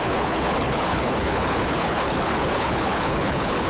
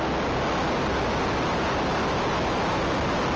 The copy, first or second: first